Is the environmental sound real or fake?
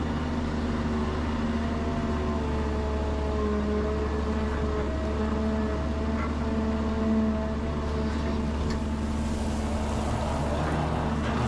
real